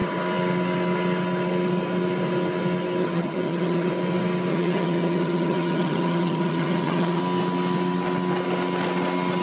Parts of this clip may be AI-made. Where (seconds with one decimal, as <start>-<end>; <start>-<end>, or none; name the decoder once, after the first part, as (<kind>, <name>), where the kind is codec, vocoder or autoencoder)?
3.0-3.9 (vocoder, HiFi-GAN); 4.5-7.2